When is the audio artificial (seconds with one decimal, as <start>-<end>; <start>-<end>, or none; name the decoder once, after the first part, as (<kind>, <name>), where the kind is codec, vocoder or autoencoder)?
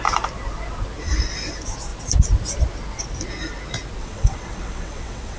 4.0-5.4 (vocoder, WaveNeXt)